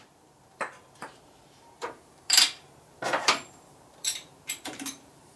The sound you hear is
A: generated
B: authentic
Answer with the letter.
A